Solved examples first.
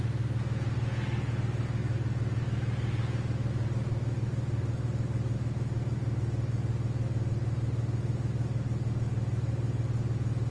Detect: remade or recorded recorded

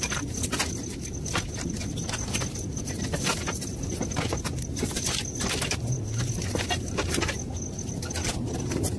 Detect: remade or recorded recorded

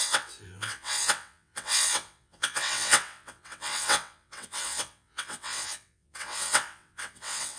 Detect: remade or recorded remade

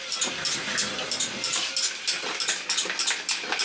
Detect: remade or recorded recorded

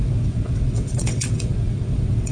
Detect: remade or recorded remade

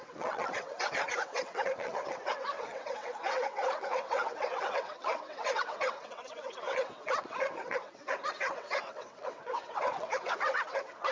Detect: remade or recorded remade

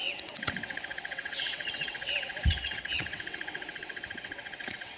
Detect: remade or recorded remade